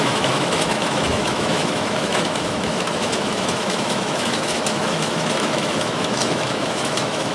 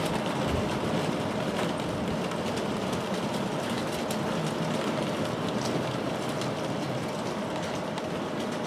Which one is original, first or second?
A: second